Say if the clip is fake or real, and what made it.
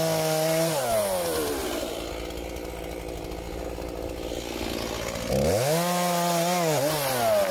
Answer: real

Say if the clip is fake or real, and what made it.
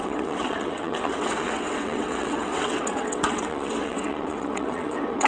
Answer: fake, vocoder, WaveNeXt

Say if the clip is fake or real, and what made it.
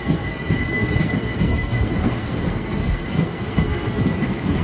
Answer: fake, codec, SNAC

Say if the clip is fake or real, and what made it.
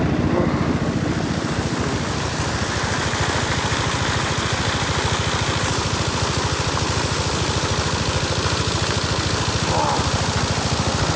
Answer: real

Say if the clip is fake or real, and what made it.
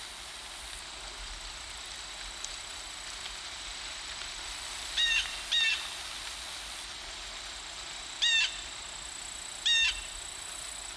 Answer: real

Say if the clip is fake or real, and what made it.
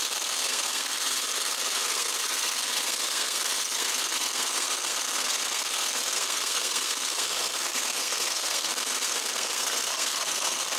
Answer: fake, codec, SNAC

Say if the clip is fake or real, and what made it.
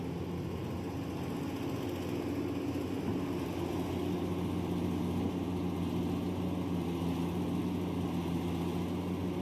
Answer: real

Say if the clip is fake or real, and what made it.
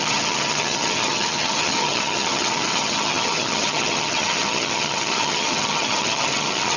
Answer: fake, vocoder, HiFi-GAN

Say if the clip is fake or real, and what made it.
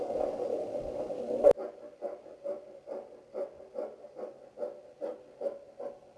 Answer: real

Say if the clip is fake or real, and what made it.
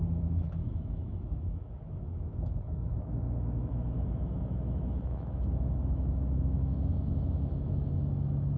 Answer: fake, autoencoder, DAC-VAE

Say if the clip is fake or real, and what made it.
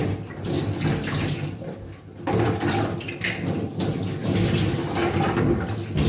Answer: real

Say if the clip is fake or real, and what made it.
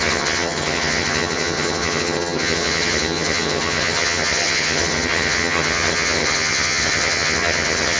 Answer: fake, vocoder, HiFi-GAN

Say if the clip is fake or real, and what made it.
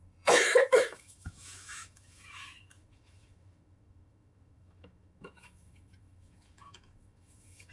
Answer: fake, autoencoder, DAC-VAE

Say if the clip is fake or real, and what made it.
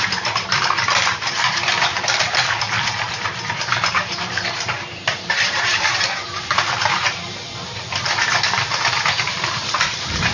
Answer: fake, vocoder, BigVGAN v2